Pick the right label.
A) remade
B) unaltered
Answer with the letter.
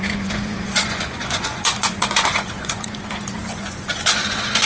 A